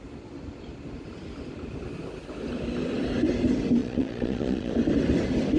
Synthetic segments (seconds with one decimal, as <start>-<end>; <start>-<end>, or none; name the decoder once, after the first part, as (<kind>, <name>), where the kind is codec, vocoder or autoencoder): 3.8-4.7 (vocoder, Vocos)